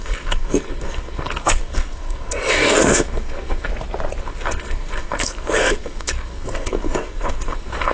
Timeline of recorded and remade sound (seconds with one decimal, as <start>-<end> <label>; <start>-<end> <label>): 0.0-3.7 remade; 3.7-4.2 recorded; 4.2-7.9 remade